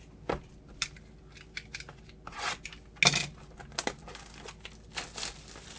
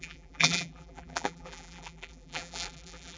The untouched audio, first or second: first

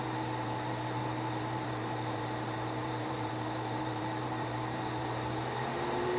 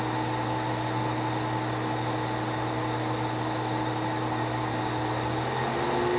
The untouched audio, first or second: second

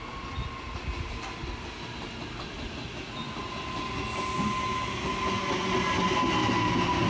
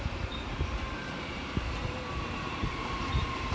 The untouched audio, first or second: first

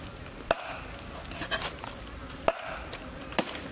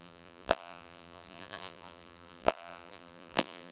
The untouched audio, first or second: first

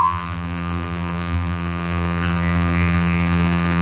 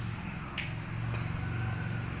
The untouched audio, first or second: second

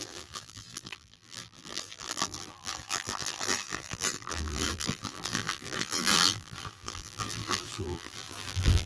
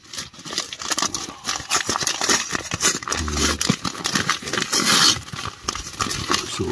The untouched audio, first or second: second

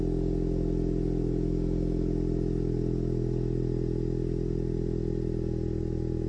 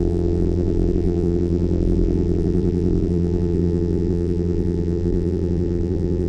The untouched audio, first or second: first